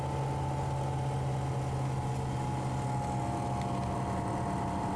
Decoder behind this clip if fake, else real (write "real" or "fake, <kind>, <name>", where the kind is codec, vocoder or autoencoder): real